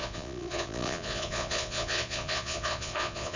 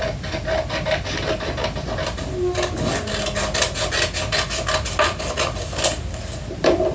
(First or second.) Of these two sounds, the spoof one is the first